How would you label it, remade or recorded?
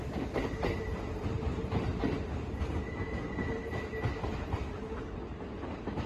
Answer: recorded